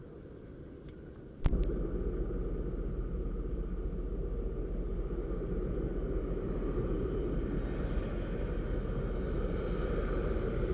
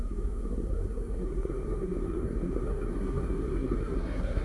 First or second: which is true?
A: first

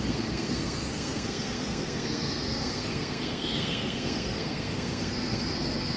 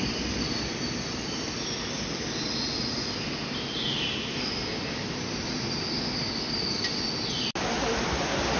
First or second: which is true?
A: second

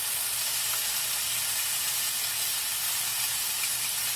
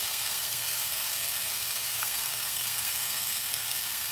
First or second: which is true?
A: first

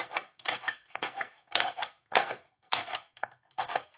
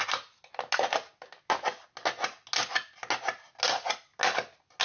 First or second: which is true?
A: second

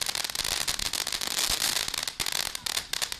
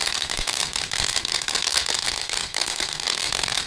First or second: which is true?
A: first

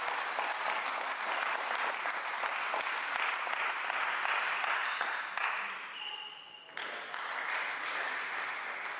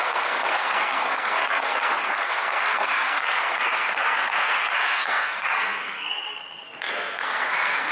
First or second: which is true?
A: first